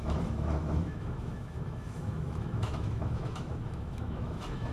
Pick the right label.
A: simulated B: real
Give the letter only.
A